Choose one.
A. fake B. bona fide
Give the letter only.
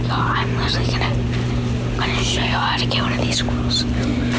B